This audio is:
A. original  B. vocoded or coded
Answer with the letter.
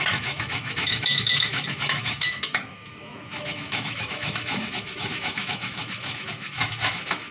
B